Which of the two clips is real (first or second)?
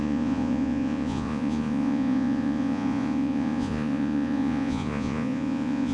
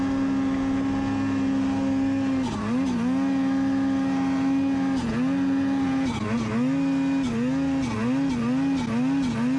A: second